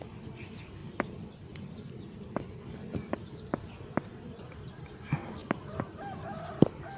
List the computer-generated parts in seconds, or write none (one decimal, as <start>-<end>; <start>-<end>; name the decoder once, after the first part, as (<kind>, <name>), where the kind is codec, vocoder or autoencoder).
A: 0.8-5.0 (vocoder, BigVGAN v2); 5.4-6.6